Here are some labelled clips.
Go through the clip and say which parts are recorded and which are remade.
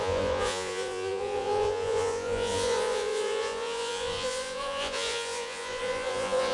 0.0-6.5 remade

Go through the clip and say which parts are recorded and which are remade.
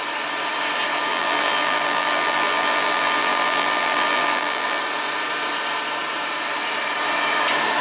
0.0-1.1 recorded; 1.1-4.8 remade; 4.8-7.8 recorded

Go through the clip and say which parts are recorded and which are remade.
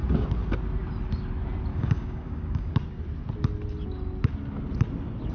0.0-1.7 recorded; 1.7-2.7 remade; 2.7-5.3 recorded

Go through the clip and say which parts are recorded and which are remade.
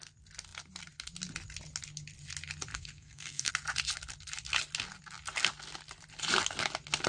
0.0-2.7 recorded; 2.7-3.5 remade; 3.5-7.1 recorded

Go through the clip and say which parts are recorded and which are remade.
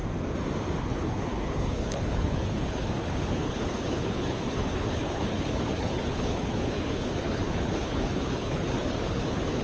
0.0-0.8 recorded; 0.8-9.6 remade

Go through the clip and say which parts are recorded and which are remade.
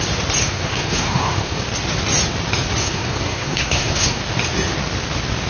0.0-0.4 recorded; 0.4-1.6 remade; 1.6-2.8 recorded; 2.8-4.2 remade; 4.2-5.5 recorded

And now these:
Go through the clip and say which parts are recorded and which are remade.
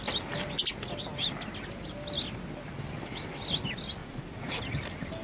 0.0-4.0 recorded; 4.0-4.6 remade; 4.6-5.2 recorded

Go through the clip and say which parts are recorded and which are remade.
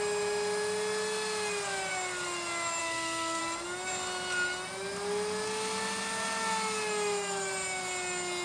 0.0-2.8 recorded; 2.8-3.4 remade; 3.4-8.4 recorded